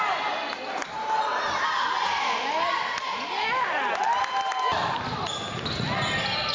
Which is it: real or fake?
real